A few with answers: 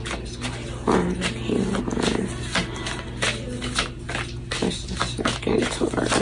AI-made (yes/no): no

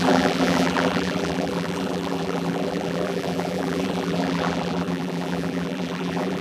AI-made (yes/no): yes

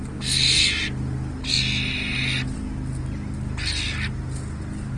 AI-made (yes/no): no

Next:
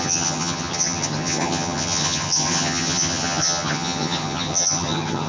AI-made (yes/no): yes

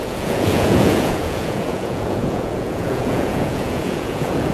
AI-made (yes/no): yes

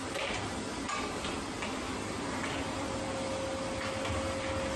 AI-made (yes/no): no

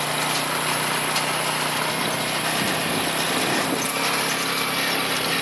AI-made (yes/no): no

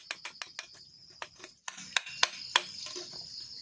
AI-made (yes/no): no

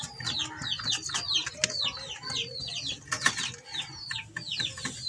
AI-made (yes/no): no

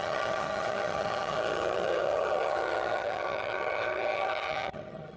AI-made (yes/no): yes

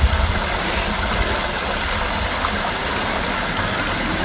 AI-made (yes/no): no